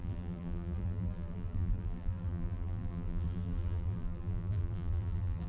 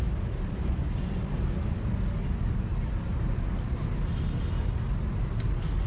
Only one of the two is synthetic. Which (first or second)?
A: first